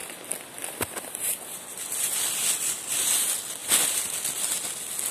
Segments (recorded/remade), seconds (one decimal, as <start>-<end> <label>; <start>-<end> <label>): 0.0-5.1 recorded